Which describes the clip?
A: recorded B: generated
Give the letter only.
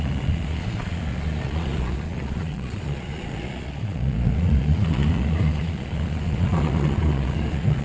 B